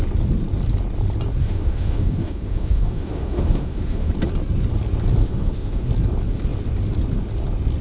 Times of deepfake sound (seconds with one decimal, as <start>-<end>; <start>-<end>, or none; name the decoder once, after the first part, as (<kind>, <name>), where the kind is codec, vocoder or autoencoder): 1.4-4.1 (autoencoder, DAC-VAE); 5.2-5.9